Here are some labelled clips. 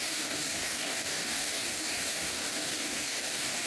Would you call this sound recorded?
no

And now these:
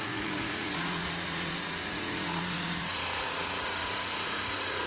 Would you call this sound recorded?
no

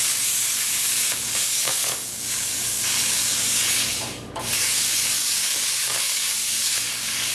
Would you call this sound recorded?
no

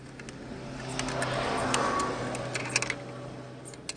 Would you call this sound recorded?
yes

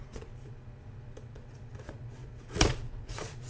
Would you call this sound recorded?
no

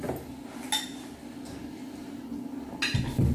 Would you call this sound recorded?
yes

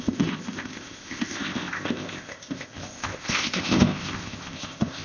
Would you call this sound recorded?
no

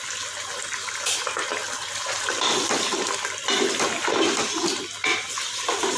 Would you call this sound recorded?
yes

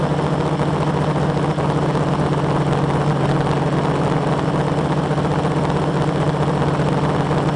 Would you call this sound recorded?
yes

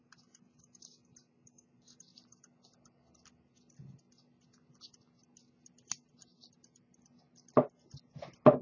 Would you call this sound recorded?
yes